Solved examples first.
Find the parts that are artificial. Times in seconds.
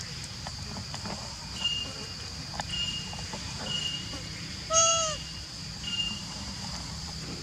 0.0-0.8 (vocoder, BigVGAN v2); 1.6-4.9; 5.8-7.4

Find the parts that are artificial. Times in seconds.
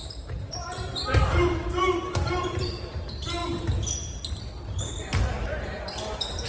0.0-3.4 (vocoder, BigVGAN v2); 4.3-6.5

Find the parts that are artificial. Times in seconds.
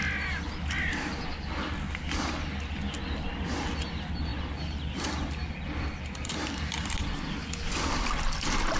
none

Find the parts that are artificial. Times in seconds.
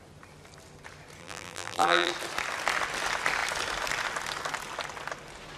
1.2-2.1 (vocoder, BigVGAN v2)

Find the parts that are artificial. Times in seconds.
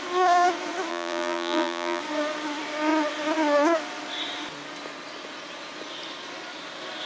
0.9-2.0 (vocoder, BigVGAN v2)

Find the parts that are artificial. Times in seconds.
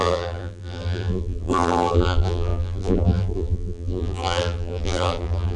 0.0-5.6 (vocoder, BigVGAN v2)